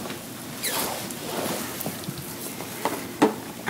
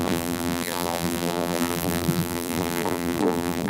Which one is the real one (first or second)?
first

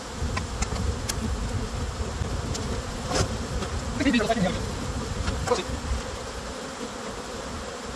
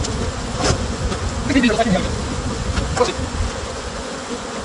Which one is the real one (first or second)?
first